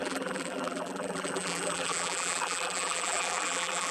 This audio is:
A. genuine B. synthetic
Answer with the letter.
B